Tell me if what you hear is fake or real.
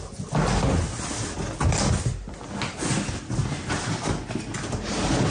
real